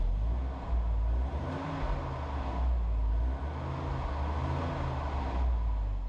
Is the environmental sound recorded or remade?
recorded